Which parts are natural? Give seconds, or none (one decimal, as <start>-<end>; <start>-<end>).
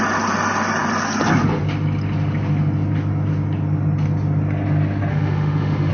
0.0-5.1